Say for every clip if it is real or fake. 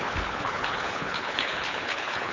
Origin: fake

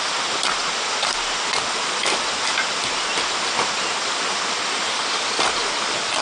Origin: real